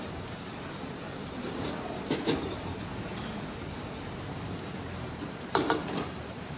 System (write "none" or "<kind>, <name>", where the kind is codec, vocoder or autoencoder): vocoder, BigVGAN v2